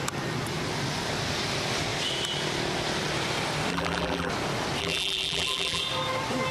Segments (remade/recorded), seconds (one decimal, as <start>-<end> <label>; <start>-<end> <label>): 0.0-3.7 recorded; 3.7-4.3 remade; 4.3-4.8 recorded; 4.8-5.8 remade; 5.8-6.5 recorded